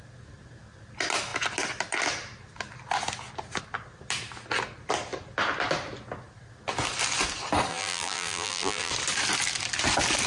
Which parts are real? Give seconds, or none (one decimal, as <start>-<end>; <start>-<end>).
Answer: 0.0-7.7; 8.9-10.3